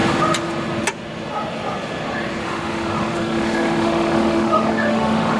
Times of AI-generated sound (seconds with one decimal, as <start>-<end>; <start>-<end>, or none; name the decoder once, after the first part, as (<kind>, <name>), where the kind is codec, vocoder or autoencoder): 2.4-5.4 (autoencoder, DAC-VAE)